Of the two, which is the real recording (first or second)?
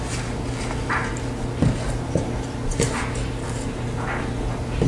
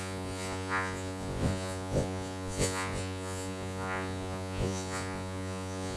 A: first